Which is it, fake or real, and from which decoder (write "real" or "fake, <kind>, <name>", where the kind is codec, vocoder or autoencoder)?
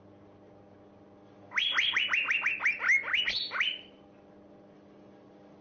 real